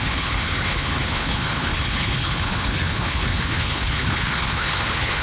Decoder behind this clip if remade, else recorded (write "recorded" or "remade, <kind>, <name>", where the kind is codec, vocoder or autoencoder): remade, codec, HILCodec